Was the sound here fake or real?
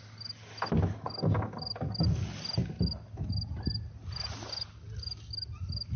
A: real